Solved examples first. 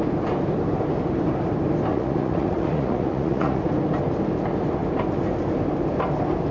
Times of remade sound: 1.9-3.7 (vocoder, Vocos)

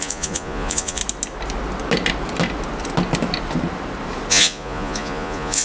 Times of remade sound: 0.0-1.0 (vocoder, Vocos); 4.3-5.6

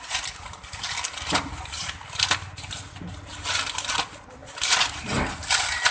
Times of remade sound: none

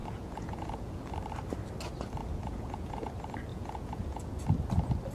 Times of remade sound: 0.0-1.0 (vocoder, Vocos); 2.2-3.1; 3.5-4.3

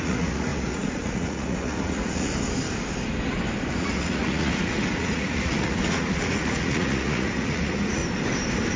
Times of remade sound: 0.0-2.3 (vocoder, Vocos); 3.7-8.0

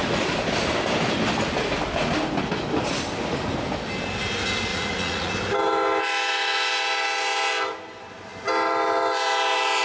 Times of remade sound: 4.7-5.3 (vocoder, Vocos)